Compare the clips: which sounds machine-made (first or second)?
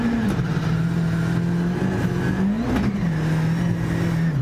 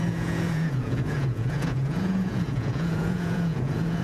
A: second